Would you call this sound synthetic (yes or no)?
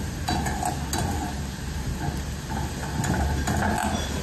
no